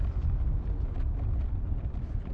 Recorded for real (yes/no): yes